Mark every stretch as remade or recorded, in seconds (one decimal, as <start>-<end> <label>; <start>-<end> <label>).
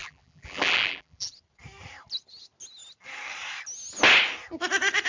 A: 0.0-1.3 remade; 1.3-5.1 recorded